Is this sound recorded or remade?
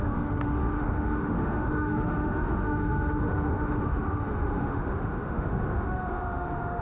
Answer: remade